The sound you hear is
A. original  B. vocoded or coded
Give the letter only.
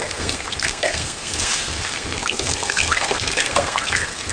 B